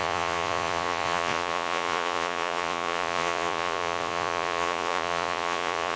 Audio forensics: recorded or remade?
remade